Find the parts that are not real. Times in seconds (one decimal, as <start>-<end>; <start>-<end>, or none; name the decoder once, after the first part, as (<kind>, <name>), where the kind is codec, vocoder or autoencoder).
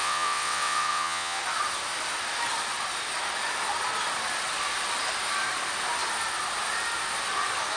0.0-1.4 (vocoder, WaveNeXt)